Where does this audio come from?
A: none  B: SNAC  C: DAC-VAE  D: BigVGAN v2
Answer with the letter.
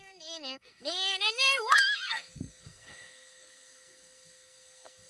B